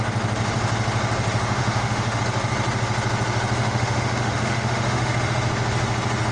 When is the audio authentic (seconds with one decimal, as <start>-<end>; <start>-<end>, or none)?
0.0-1.6; 2.2-3.6; 5.2-6.3